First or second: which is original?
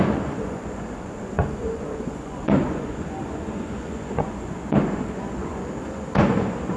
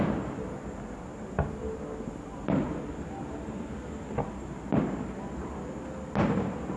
second